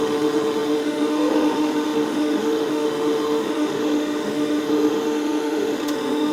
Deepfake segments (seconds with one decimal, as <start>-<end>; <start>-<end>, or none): 0.0-6.3